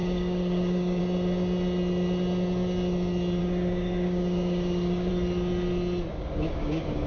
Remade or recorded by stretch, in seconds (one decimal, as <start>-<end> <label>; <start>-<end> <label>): 0.0-1.0 remade; 1.0-3.4 recorded; 3.4-5.1 remade; 5.1-6.1 recorded; 6.1-7.1 remade